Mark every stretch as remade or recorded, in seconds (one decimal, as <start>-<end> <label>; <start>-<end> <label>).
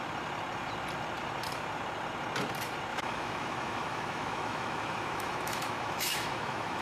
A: 0.0-2.9 recorded; 2.9-6.8 remade